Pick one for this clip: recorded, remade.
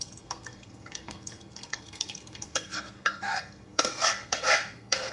remade